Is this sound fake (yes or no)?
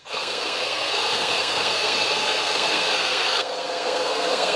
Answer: yes